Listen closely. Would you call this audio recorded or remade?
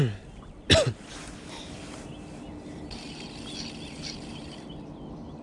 recorded